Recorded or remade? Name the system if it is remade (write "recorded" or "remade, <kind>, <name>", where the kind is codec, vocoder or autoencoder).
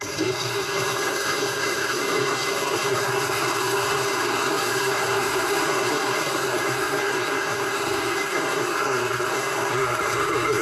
remade, codec, SNAC